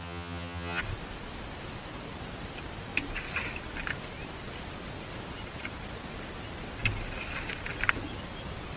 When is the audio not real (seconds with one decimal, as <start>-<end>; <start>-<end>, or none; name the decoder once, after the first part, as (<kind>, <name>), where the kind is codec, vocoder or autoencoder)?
0.0-0.8 (vocoder, HiFi-GAN)